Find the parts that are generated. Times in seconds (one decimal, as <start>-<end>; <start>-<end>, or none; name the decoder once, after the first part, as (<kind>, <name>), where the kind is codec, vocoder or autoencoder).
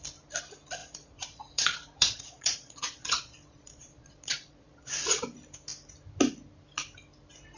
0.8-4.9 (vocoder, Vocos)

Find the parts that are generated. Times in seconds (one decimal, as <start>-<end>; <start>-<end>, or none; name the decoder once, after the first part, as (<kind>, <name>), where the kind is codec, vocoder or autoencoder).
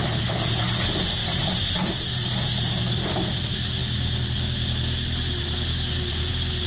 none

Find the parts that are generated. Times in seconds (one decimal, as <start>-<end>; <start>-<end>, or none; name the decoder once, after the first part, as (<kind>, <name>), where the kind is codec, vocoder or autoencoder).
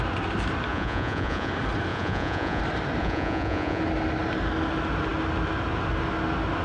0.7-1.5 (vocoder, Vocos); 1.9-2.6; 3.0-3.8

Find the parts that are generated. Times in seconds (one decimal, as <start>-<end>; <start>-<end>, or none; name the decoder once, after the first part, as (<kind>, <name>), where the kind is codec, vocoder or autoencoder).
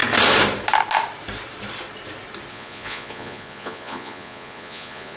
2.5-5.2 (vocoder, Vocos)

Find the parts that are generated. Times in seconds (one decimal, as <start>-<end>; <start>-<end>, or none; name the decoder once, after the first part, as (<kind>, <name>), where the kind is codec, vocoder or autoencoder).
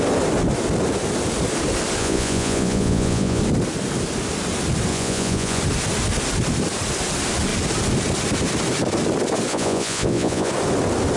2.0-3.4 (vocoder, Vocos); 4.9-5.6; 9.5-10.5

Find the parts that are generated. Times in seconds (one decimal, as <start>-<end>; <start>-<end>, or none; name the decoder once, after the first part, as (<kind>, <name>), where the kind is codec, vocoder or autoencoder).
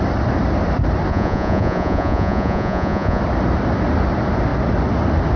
1.1-3.2 (vocoder, Vocos)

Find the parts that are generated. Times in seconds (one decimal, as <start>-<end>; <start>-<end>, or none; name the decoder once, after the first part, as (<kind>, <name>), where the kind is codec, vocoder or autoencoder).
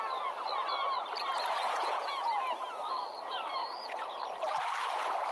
1.6-2.3 (vocoder, Vocos); 3.6-4.2